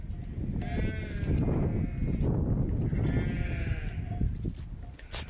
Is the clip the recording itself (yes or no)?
yes